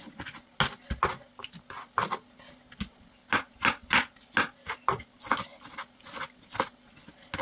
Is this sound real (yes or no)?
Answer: yes